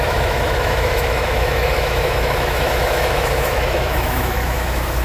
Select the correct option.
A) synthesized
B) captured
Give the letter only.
A